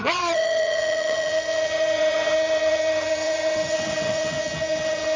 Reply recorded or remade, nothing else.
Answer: remade